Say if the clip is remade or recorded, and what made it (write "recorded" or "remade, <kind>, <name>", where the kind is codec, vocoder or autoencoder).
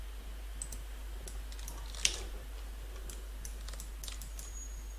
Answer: recorded